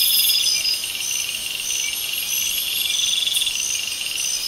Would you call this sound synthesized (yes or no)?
no